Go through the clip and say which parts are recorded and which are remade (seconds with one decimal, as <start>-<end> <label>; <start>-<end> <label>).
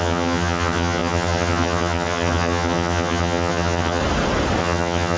0.0-4.0 remade; 4.0-4.6 recorded; 4.6-5.2 remade